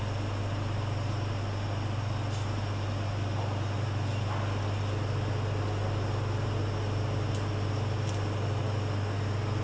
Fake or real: real